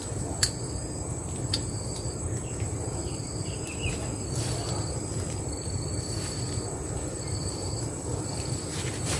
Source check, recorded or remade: remade